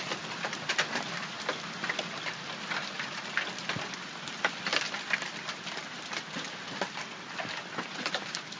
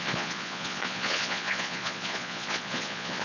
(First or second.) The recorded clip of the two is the first